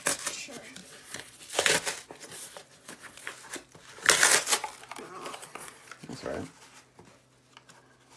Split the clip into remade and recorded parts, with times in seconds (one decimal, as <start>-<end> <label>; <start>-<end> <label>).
0.0-0.8 recorded; 0.8-1.4 remade; 1.4-2.3 recorded; 2.3-3.3 remade; 3.3-5.3 recorded; 5.3-5.9 remade; 5.9-8.2 recorded